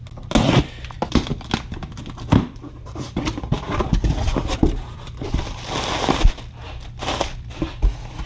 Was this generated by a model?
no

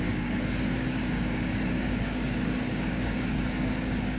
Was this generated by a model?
yes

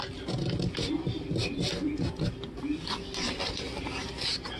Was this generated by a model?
no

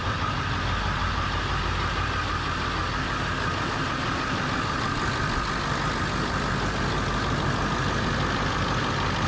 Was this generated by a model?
no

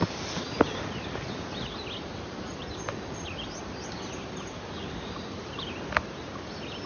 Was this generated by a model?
no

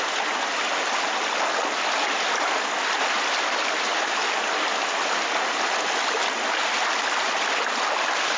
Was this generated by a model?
no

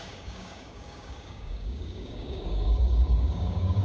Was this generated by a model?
yes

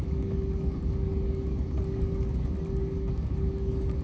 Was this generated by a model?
yes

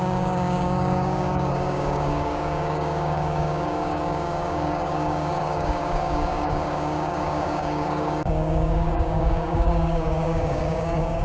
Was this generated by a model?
yes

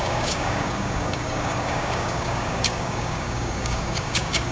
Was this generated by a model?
yes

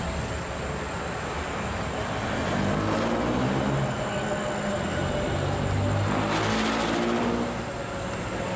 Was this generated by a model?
no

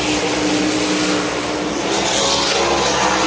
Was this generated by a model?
no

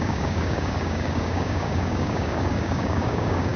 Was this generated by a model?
yes